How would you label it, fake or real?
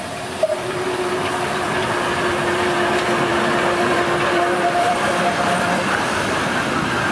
fake